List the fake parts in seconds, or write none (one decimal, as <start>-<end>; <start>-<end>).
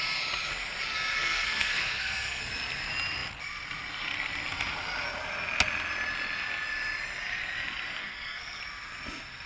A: 1.1-2.4; 8.0-8.6